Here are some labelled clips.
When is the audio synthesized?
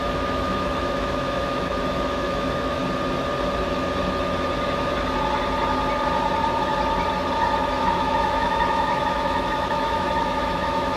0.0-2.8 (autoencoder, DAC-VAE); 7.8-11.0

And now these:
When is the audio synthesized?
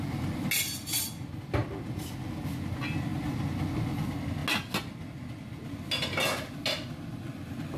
none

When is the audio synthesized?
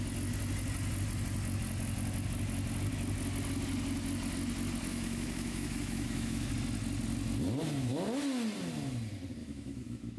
4.9-6.5 (autoencoder, DAC-VAE); 9.4-10.2